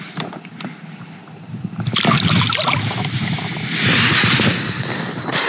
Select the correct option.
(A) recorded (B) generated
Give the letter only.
A